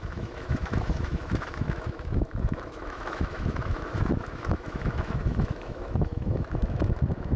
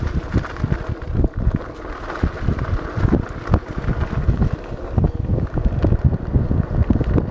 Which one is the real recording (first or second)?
second